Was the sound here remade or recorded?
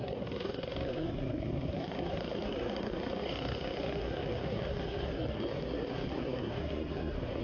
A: remade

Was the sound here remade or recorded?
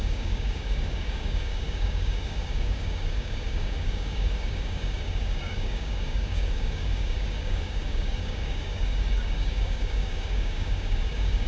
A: remade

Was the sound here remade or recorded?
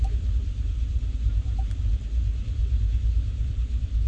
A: remade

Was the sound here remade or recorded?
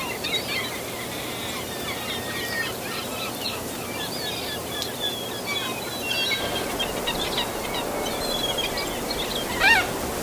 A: recorded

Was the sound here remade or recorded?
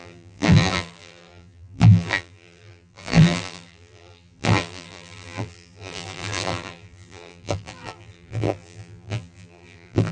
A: remade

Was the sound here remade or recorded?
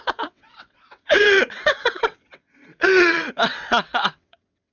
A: remade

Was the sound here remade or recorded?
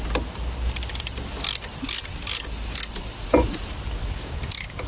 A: recorded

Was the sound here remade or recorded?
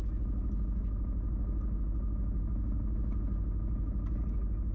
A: recorded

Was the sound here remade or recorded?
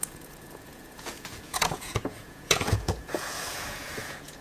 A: remade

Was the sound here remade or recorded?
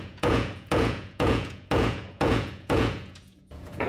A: remade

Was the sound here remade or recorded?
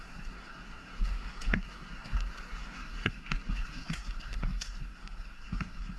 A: remade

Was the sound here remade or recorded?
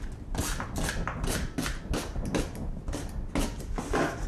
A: recorded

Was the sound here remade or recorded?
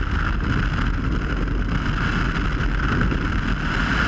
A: recorded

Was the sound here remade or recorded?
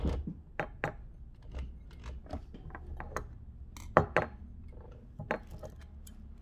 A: recorded